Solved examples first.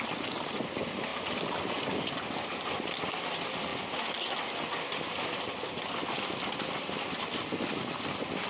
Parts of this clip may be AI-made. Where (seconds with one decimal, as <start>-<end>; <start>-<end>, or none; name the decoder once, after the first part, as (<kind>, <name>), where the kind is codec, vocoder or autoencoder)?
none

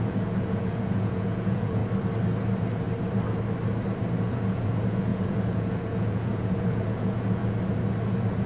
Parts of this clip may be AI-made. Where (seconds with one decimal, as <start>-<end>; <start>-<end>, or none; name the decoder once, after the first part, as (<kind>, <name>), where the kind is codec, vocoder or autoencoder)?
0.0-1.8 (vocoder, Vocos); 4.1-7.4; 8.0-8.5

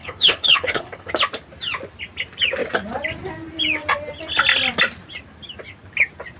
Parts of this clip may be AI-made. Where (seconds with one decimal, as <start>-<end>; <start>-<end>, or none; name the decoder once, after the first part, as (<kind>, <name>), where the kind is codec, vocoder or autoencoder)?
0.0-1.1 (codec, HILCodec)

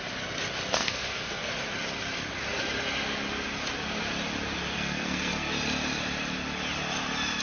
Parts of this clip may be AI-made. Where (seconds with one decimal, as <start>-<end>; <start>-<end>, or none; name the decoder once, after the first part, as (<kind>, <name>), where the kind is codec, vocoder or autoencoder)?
0.8-1.5 (codec, SNAC); 4.7-5.5

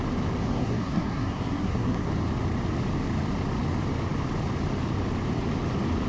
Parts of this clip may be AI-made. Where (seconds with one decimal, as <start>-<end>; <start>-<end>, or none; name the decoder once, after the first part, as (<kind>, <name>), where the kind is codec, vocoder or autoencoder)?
0.4-2.1 (codec, SNAC)